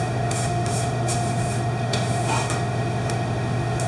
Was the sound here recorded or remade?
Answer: remade